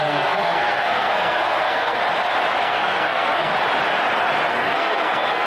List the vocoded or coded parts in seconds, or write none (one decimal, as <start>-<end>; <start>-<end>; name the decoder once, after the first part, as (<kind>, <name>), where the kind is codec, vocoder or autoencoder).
0.0-2.0 (codec, SNAC); 2.6-3.5; 4.5-5.5